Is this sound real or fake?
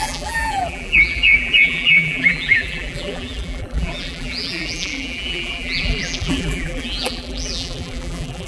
fake